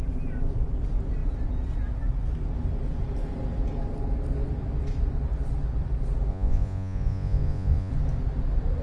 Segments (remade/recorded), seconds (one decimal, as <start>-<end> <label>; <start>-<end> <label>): 0.0-6.3 recorded; 6.3-7.9 remade; 7.9-8.8 recorded